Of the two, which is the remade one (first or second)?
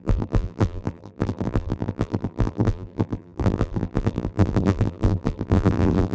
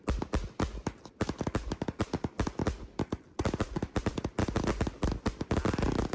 first